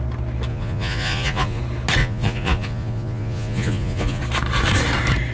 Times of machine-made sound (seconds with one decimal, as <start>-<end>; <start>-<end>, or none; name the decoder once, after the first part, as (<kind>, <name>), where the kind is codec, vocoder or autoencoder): 0.5-1.6 (vocoder, Vocos); 2.0-4.2